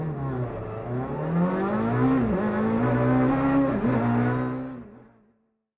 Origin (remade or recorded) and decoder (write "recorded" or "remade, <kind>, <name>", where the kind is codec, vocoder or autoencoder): recorded